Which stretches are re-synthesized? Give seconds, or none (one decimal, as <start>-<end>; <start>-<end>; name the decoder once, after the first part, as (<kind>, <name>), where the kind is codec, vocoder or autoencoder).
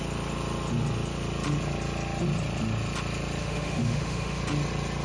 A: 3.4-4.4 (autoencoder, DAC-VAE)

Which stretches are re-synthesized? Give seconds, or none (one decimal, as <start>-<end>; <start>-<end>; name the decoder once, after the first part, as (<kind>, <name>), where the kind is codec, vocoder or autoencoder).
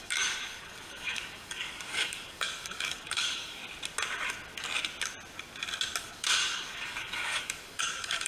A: 0.0-3.6 (codec, DAC); 6.0-8.3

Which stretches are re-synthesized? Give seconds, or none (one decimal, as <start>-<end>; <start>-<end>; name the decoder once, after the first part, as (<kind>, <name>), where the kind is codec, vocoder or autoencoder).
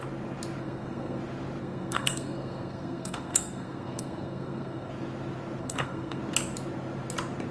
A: 0.6-1.2 (codec, SNAC); 1.6-4.9; 5.6-6.2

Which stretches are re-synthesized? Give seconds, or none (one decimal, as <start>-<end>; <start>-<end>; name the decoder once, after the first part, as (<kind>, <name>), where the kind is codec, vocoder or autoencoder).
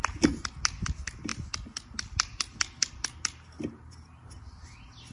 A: none